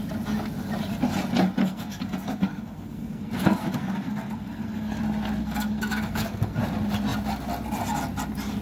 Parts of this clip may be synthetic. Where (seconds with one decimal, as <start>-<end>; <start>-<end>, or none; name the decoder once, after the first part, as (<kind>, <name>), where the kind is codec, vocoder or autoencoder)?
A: 1.6-5.0 (codec, SNAC); 5.4-6.6